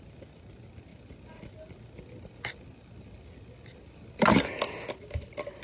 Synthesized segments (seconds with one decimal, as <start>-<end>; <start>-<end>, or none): none